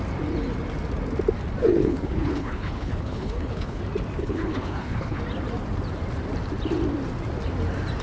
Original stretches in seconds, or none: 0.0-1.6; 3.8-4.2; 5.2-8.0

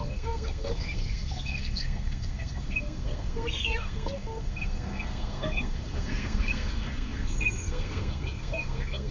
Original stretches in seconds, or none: none

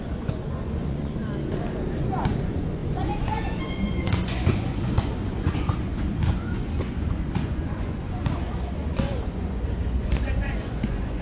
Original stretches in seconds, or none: 1.2-2.0

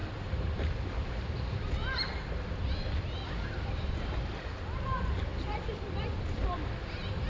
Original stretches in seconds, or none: 3.7-5.3; 6.0-7.3

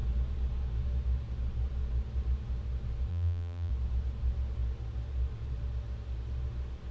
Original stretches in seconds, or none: 0.0-3.1; 3.7-6.9

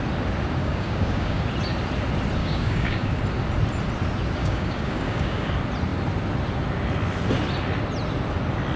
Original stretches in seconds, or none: 0.0-0.6; 1.4-2.4; 3.2-4.4; 5.5-8.8